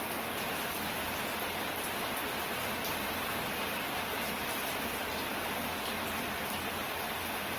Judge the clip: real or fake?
real